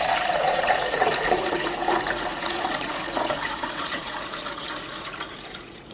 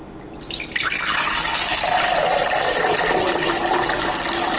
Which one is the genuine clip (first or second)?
second